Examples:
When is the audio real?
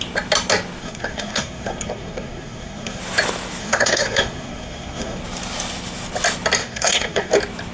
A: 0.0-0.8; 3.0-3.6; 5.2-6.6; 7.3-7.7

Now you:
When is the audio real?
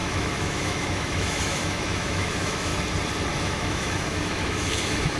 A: 2.7-3.4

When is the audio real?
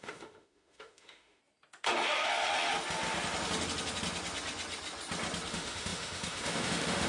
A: 1.4-5.5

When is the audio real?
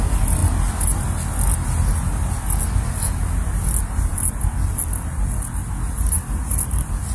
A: 0.0-7.1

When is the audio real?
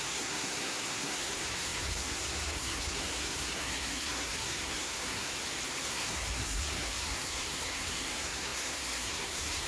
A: 5.3-5.8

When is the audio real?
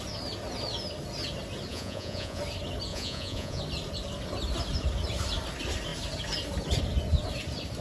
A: 0.0-1.7; 2.4-2.9; 3.6-7.8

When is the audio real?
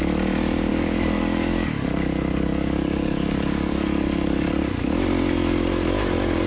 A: 0.0-0.7; 4.6-6.5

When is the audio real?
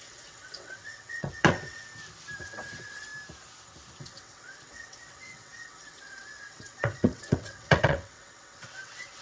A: 1.9-2.4; 3.1-4.0